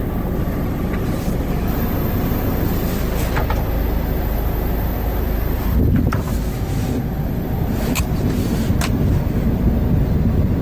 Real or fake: real